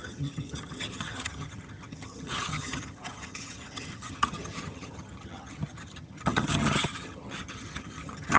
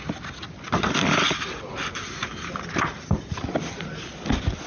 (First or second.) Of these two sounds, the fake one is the first